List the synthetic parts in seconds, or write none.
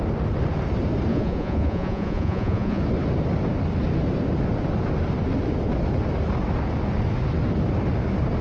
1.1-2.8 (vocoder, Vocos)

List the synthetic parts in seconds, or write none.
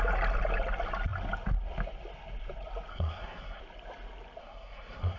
2.9-3.6 (codec, SNAC); 4.4-5.2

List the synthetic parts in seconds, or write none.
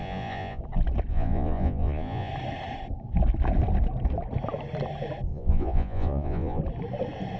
0.0-0.6 (vocoder, Vocos); 1.1-2.3; 5.3-6.6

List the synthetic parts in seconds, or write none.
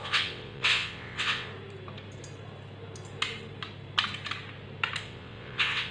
0.0-1.5 (vocoder, WaveNeXt); 5.0-5.9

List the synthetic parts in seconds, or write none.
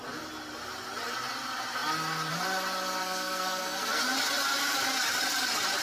3.0-4.0 (codec, SNAC)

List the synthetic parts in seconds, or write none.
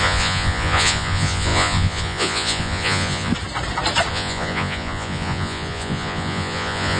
0.0-3.3 (vocoder, Vocos); 4.1-7.0